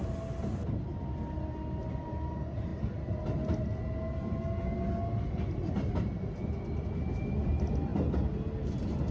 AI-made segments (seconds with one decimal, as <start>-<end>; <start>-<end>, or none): none